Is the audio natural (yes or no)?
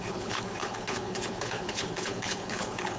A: no